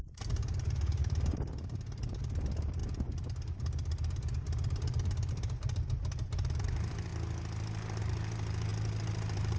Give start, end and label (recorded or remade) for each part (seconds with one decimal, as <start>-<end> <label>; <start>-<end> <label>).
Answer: 0.0-2.8 remade; 2.8-5.3 recorded; 5.3-7.1 remade; 7.1-8.0 recorded; 8.0-9.6 remade